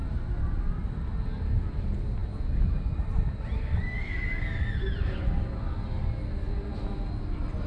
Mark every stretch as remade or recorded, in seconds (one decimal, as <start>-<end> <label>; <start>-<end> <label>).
0.0-7.7 recorded